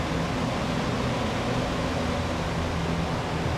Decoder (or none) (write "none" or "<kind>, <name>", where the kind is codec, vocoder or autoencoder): none